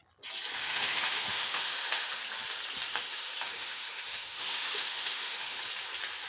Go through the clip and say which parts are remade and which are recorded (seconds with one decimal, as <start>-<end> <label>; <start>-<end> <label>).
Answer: 0.0-0.6 recorded; 0.6-2.2 remade; 2.2-2.9 recorded; 2.9-5.6 remade; 5.6-6.3 recorded